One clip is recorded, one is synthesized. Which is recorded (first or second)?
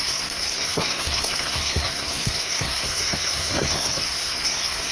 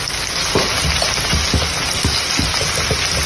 second